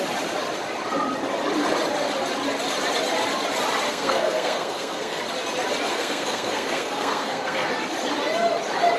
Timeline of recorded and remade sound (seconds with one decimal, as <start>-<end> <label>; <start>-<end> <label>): 0.0-3.9 recorded; 3.9-5.2 remade; 5.2-5.9 recorded; 5.9-7.7 remade; 7.7-9.0 recorded